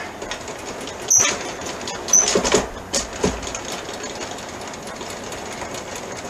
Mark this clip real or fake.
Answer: real